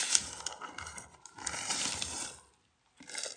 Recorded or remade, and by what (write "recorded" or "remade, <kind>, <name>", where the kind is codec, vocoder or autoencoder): recorded